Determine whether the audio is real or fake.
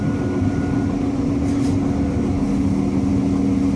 real